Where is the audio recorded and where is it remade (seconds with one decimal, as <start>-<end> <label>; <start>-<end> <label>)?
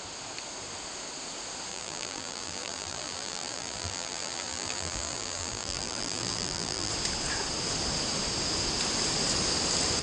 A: 0.0-1.7 recorded; 1.7-6.9 remade; 6.9-10.0 recorded